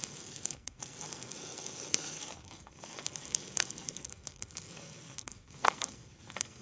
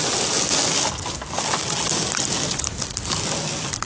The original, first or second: second